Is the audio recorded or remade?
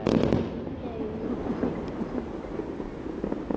recorded